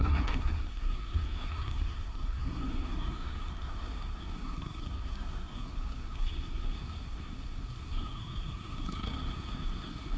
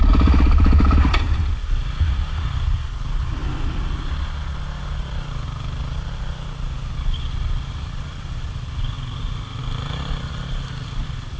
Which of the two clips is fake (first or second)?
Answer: first